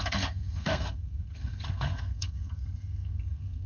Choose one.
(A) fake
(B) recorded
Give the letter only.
A